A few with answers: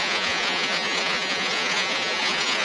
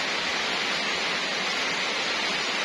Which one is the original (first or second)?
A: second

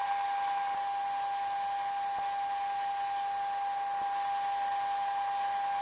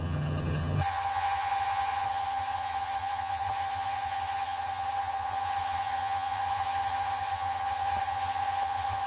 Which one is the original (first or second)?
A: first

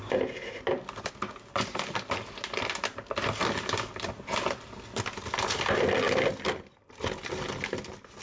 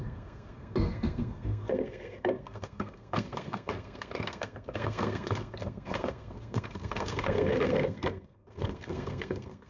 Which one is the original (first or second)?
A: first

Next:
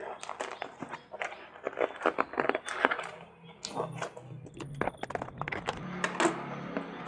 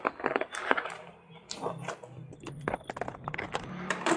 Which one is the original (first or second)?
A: first